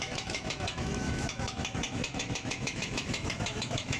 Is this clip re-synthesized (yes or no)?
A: yes